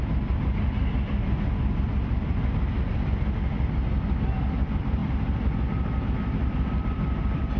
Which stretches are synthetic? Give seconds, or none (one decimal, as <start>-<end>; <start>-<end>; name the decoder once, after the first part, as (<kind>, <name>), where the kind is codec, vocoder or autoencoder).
0.0-7.6 (vocoder, BigVGAN v2)